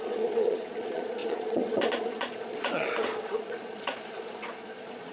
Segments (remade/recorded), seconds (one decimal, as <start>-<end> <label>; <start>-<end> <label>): 0.0-5.1 remade